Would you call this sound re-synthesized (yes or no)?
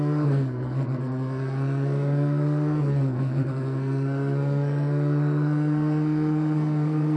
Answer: yes